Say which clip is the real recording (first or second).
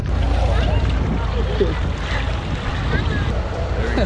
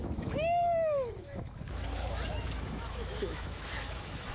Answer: first